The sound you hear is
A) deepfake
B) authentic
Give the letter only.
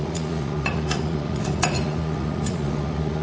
A